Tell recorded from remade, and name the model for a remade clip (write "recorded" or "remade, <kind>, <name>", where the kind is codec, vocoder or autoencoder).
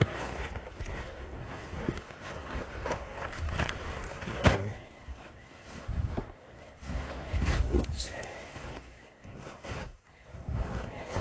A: remade, codec, SNAC